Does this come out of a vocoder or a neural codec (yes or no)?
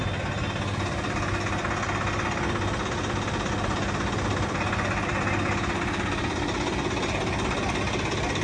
no